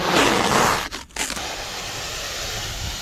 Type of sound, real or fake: real